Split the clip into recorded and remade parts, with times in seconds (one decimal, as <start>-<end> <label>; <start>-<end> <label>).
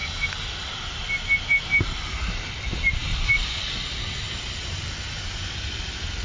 0.0-6.2 recorded